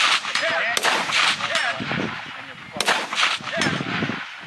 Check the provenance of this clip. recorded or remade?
recorded